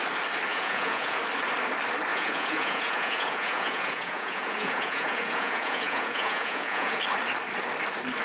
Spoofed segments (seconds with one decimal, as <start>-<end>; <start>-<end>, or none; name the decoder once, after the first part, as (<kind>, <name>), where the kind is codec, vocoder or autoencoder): 0.5-1.2 (vocoder, Vocos); 2.1-7.0